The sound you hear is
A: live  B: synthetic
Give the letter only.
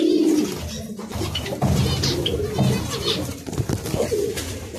A